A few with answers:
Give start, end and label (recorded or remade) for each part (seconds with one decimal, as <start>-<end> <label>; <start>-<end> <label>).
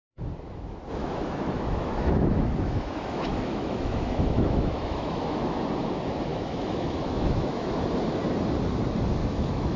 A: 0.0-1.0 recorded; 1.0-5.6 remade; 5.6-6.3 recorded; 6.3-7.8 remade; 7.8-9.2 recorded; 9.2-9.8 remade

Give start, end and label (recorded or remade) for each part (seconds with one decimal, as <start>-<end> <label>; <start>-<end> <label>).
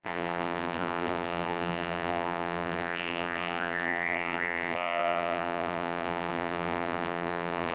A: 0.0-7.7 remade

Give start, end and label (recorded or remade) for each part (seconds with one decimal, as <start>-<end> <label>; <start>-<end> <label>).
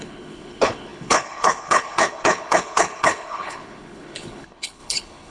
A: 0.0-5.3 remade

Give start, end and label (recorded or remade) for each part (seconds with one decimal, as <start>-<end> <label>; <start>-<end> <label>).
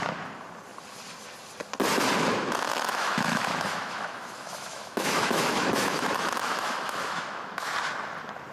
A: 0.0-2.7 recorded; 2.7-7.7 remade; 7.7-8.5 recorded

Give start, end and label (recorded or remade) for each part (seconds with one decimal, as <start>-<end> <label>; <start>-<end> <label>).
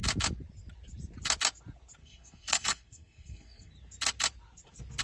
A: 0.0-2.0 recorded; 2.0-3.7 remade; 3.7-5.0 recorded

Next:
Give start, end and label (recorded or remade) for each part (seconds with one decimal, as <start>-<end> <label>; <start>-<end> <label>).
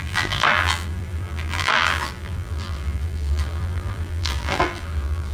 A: 0.0-5.3 remade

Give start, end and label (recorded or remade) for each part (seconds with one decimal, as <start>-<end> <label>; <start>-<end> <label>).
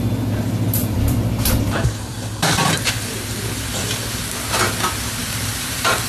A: 0.0-0.8 recorded; 0.8-4.2 remade; 4.2-5.2 recorded; 5.2-6.1 remade